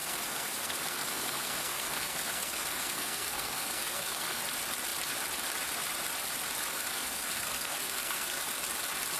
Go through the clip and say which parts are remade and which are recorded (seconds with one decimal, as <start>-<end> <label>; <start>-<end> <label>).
0.0-4.4 remade; 4.4-6.7 recorded; 6.7-8.4 remade; 8.4-9.2 recorded